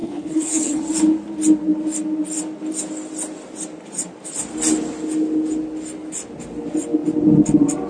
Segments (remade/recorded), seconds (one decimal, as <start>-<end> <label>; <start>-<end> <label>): 0.0-0.8 remade; 0.8-7.9 recorded